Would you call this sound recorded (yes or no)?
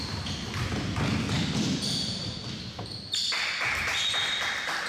yes